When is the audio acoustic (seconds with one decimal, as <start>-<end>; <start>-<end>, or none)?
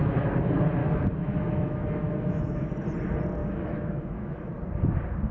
0.0-0.8; 2.7-3.4; 4.5-5.3